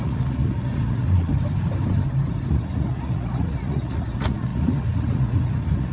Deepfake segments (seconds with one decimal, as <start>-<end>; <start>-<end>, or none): 0.0-1.3; 2.5-5.9

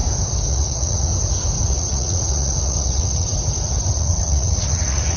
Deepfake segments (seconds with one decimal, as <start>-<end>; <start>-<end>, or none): 0.5-1.1; 1.6-3.3; 3.9-5.2